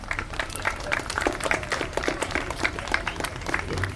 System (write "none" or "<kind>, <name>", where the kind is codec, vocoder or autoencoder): vocoder, BigVGAN v2